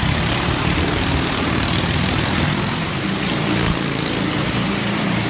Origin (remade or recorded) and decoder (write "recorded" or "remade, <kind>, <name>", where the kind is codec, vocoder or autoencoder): remade, vocoder, BigVGAN v2